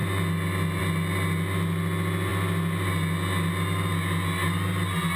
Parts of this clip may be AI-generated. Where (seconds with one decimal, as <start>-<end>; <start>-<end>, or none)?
none